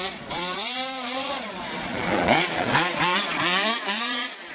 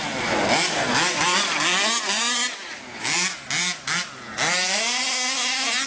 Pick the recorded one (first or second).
second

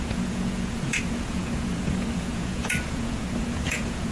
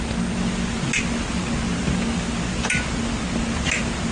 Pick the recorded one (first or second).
second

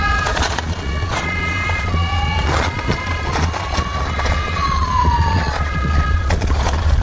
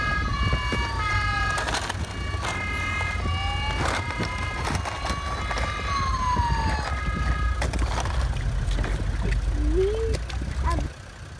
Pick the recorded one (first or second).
second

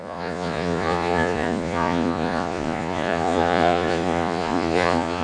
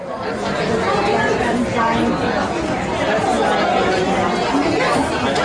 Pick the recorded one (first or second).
second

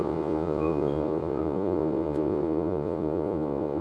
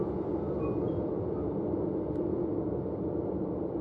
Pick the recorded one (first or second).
second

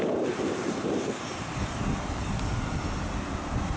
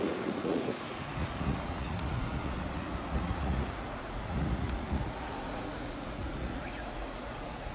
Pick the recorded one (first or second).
first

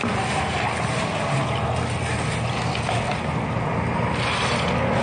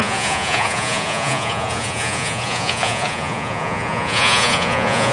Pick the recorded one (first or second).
first